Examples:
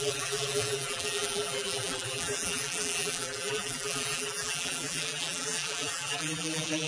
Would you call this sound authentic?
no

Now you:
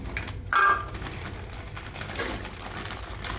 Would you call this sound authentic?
yes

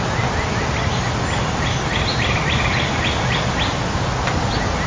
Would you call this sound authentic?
yes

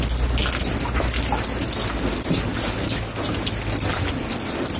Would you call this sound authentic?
yes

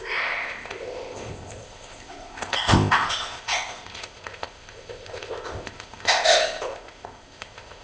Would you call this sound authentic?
no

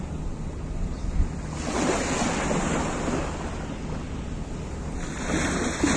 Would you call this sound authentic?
yes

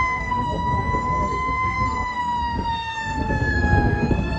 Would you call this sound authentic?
no